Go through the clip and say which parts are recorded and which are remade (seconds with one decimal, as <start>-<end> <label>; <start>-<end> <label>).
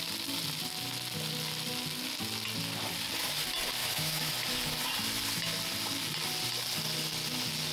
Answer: 0.0-3.8 recorded; 3.8-4.3 remade; 4.3-7.7 recorded